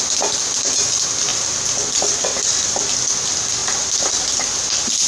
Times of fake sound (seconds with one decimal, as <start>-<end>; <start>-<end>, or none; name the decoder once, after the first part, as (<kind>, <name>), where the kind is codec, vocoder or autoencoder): none

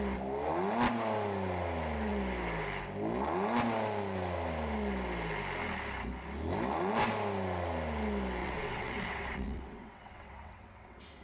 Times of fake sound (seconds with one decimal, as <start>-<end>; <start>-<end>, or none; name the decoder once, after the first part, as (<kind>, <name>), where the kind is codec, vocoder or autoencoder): 8.4-11.2 (vocoder, WaveNeXt)

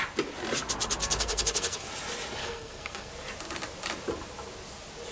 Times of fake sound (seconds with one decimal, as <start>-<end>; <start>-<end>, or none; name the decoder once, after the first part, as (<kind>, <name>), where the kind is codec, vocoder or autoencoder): 1.0-1.9 (codec, SNAC); 2.4-3.1

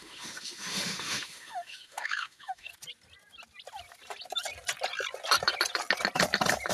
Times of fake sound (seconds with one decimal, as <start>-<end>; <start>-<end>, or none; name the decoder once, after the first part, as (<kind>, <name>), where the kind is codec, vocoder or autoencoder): 0.0-2.7 (autoencoder, DAC-VAE)

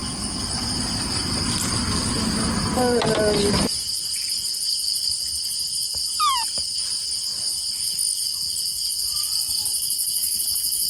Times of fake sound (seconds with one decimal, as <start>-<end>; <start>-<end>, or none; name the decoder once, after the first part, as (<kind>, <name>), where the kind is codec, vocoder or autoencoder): none

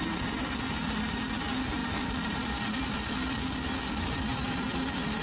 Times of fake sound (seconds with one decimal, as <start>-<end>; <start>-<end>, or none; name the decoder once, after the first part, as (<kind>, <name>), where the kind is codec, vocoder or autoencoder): 1.8-3.5 (vocoder, BigVGAN v2); 4.3-5.2